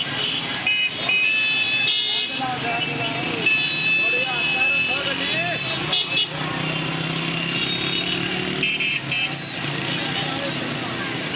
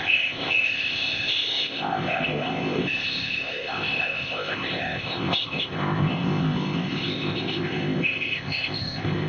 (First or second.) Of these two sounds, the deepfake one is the second